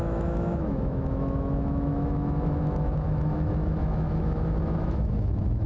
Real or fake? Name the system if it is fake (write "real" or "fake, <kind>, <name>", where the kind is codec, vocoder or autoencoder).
fake, autoencoder, DAC-VAE